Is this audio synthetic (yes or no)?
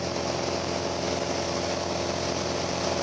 no